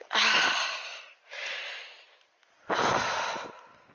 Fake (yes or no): no